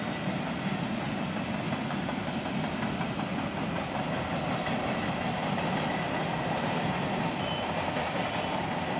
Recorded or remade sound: recorded